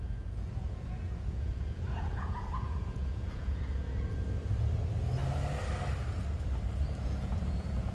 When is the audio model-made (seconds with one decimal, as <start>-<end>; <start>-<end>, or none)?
0.0-4.4; 7.0-7.9